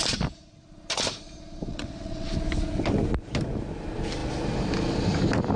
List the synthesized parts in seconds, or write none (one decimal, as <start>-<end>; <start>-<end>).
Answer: 1.7-2.3